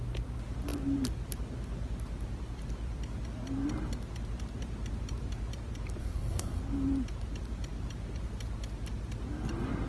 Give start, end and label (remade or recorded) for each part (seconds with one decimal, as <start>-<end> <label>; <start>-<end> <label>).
0.0-6.0 recorded; 6.0-6.6 remade; 6.6-9.9 recorded

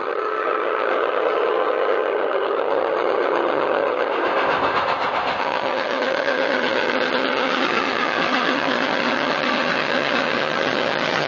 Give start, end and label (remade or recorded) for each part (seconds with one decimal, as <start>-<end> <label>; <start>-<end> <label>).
0.0-4.1 remade; 4.1-5.4 recorded; 5.4-11.3 remade

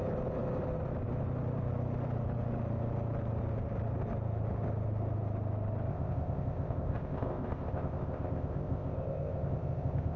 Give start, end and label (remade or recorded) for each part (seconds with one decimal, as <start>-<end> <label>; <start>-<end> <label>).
0.0-5.9 recorded; 5.9-10.2 remade

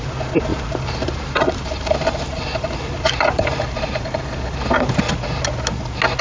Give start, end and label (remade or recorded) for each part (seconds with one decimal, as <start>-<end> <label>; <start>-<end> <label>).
0.0-0.5 recorded; 0.5-4.2 remade; 4.2-6.2 recorded

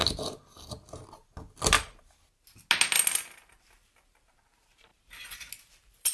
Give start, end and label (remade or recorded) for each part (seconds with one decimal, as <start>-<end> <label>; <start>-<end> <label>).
0.0-3.2 recorded; 3.2-4.9 remade; 4.9-5.6 recorded; 5.6-6.1 remade